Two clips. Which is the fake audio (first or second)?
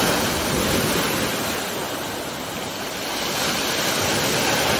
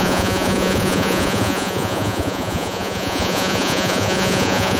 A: second